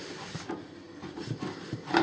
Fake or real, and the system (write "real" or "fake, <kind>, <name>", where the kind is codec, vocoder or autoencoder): real